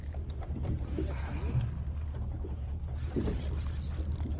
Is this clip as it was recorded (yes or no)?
yes